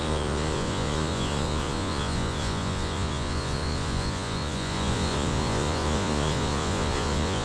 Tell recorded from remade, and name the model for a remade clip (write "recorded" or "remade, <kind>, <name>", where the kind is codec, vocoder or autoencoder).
remade, vocoder, Vocos